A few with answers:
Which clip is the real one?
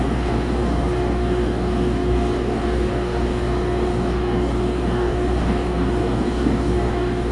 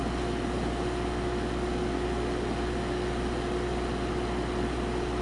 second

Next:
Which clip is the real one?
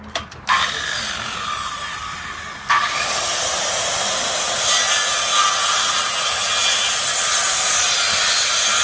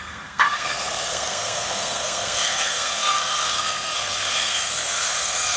first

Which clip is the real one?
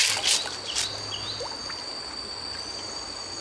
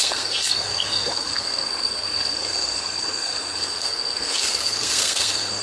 first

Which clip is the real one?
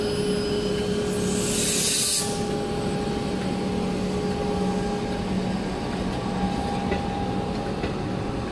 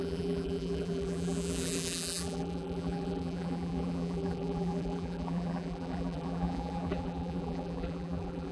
first